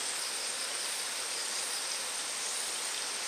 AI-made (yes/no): yes